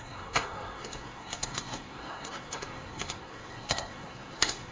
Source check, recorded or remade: remade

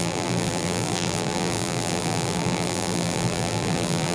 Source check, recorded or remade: remade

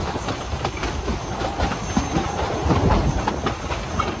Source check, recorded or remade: recorded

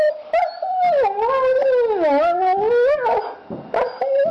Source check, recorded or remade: recorded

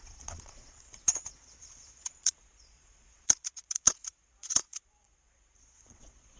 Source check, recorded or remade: remade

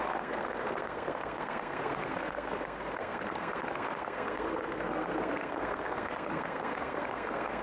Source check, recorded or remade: remade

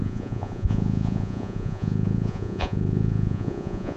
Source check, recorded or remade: remade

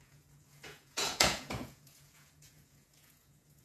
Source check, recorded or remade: remade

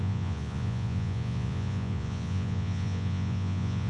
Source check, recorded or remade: remade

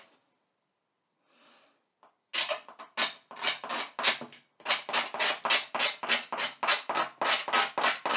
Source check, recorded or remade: recorded